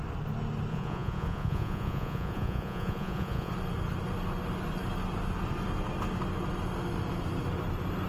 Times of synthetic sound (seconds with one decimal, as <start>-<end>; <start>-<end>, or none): 0.7-3.5